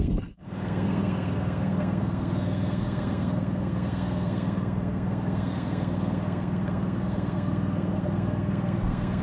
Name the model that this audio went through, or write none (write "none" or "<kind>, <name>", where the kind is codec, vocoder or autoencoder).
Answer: codec, SNAC